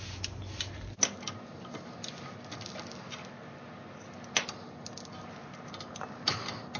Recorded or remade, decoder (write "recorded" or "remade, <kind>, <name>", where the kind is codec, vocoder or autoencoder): recorded